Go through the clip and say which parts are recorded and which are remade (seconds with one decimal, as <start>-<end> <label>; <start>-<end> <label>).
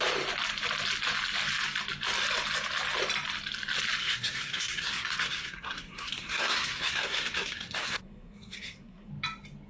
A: 0.0-4.0 recorded; 4.0-9.1 remade; 9.1-9.7 recorded